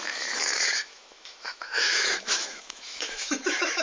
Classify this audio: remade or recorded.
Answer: remade